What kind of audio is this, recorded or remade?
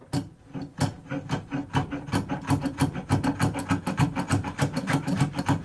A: recorded